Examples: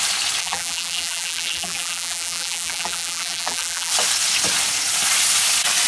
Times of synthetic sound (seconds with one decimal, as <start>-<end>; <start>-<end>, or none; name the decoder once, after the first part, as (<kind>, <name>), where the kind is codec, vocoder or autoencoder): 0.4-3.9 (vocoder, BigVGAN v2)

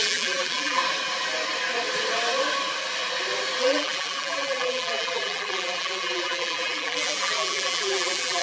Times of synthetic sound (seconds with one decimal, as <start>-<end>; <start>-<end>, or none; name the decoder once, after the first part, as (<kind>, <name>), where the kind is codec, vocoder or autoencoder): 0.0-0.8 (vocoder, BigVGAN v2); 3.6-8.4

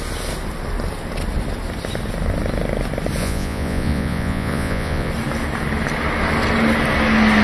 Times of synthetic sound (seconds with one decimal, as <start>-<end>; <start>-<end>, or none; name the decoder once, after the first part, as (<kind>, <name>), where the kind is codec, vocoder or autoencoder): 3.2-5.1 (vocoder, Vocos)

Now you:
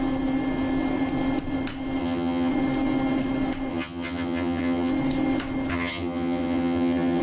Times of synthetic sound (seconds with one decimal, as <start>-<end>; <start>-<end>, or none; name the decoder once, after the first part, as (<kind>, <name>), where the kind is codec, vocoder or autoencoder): 2.0-2.5 (vocoder, HiFi-GAN); 3.7-4.9; 5.7-7.2

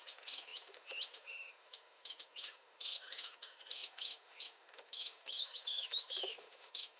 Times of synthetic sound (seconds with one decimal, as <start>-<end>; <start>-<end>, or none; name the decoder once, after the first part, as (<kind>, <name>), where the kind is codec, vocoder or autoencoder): 0.0-7.0 (autoencoder, DAC-VAE)